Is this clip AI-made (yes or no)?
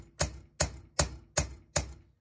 no